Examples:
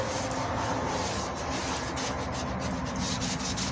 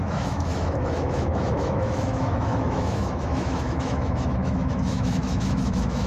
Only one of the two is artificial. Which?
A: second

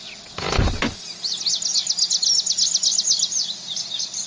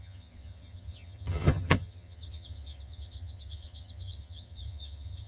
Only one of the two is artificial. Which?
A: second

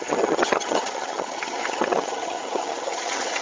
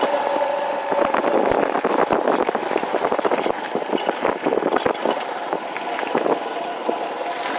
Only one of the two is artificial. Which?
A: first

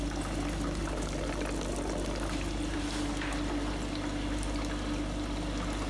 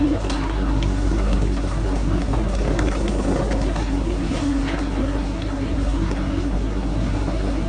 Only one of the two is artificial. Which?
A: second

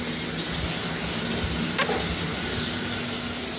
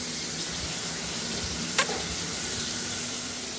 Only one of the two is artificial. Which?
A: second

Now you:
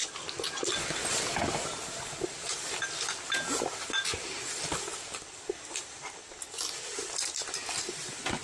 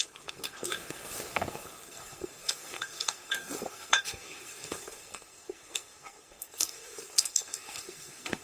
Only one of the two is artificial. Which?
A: second